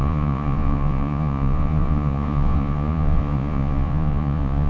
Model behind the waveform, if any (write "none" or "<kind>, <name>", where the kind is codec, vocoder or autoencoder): vocoder, Vocos